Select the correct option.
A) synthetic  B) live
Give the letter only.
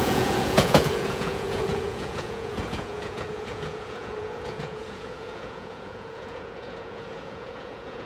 A